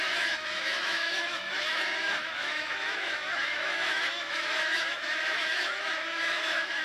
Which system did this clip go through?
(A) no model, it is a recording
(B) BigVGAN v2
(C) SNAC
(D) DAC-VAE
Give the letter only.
D